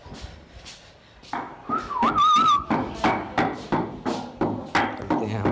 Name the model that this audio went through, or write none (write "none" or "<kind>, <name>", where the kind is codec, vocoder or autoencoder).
none